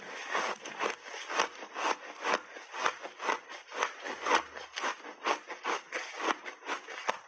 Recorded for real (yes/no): yes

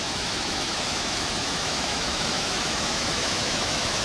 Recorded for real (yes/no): no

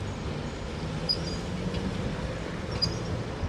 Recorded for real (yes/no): yes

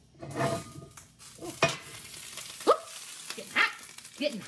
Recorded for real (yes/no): yes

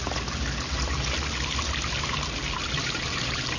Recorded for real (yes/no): yes